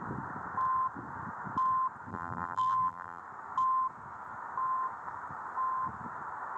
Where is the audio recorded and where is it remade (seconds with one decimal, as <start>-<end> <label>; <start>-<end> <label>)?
0.0-2.1 recorded; 2.1-3.2 remade; 3.2-6.6 recorded